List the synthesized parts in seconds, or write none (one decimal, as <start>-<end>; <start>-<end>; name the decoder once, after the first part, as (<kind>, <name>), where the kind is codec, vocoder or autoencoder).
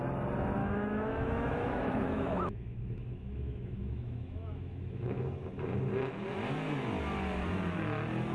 0.6-5.2 (autoencoder, DAC-VAE)